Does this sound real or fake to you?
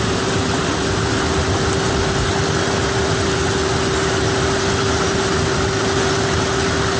real